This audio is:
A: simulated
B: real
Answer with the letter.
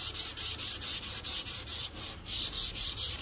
A